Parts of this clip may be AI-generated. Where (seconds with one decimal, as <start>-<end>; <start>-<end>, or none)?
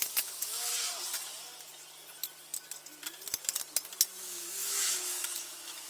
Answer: 0.0-0.7; 4.2-5.9